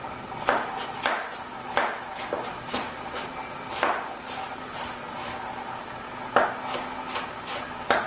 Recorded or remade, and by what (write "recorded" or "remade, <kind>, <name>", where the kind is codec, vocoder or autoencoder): recorded